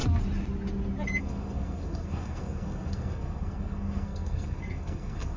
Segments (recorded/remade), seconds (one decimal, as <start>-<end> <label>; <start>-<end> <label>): 0.0-1.2 recorded; 1.2-5.4 remade